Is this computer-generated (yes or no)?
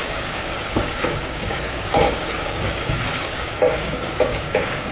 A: yes